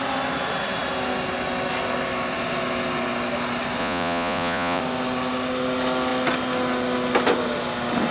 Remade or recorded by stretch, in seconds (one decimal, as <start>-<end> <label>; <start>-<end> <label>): 0.0-3.8 recorded; 3.8-4.8 remade; 4.8-8.1 recorded